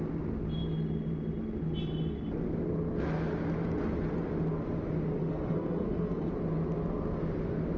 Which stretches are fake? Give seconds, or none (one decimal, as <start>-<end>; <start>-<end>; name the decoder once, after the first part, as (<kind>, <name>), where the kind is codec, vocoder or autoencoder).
5.2-6.3 (codec, SNAC)